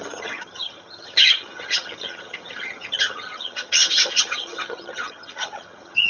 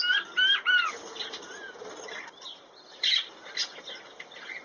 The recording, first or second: second